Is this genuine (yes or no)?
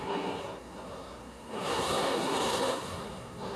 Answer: no